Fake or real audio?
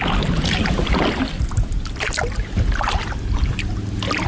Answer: real